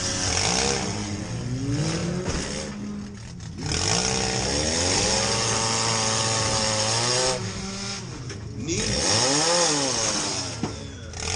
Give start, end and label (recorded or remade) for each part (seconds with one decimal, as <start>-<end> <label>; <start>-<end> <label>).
0.0-11.4 recorded